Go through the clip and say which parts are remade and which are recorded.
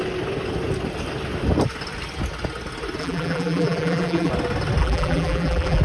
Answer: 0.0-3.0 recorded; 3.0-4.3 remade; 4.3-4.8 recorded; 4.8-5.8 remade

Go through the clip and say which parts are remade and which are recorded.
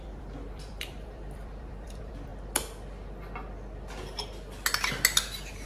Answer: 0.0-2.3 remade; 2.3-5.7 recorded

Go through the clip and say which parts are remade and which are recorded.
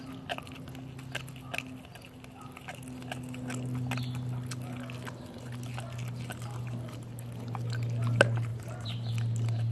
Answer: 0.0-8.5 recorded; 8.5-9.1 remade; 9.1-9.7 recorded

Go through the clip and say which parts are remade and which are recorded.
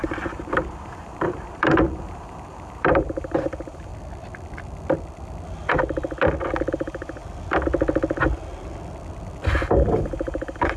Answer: 0.0-3.9 remade; 3.9-6.7 recorded; 6.7-7.2 remade; 7.2-9.7 recorded; 9.7-10.8 remade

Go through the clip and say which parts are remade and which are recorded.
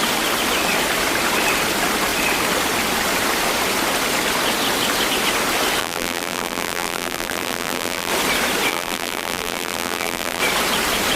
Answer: 0.0-5.8 recorded; 5.8-8.1 remade; 8.1-8.7 recorded; 8.7-10.4 remade; 10.4-11.2 recorded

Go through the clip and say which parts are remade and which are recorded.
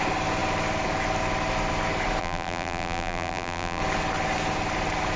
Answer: 0.0-2.2 recorded; 2.2-3.8 remade; 3.8-5.2 recorded